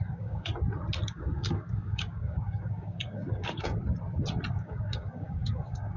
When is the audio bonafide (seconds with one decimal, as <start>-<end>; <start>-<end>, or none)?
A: 0.5-1.1; 3.8-4.5